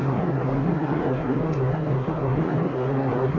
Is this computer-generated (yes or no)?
yes